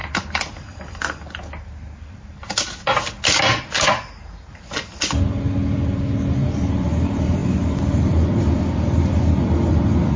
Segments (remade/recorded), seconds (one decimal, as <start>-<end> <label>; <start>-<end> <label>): 0.0-10.2 recorded